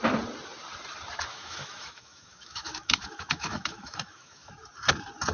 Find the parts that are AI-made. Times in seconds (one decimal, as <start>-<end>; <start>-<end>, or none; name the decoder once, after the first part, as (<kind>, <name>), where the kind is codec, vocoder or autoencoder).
1.3-4.5 (autoencoder, DAC-VAE)